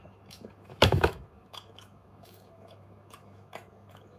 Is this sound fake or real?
fake